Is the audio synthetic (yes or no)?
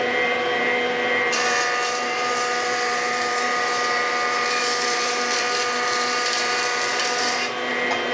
yes